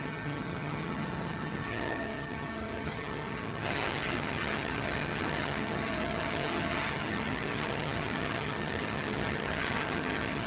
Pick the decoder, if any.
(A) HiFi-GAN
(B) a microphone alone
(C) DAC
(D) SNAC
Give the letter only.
A